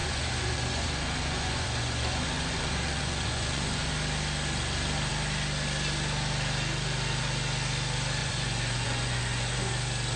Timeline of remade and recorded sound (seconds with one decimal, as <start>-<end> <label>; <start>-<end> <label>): 0.0-3.9 remade; 3.9-8.2 recorded; 8.2-9.7 remade; 9.7-10.2 recorded